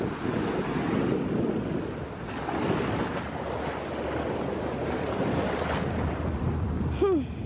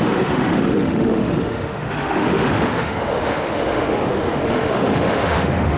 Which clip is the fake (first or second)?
second